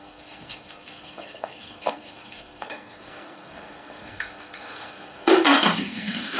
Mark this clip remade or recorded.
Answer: remade